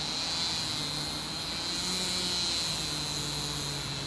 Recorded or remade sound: recorded